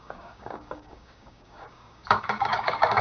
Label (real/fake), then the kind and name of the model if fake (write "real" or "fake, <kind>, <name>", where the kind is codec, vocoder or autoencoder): fake, codec, DAC